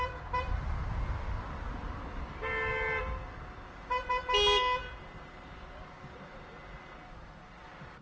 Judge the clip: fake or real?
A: real